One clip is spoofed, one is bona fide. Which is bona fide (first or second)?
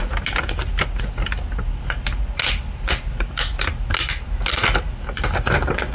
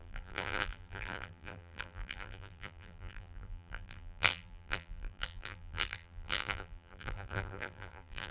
first